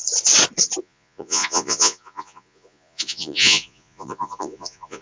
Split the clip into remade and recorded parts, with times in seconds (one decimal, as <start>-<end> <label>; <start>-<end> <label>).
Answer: 0.0-0.8 recorded; 0.8-5.0 remade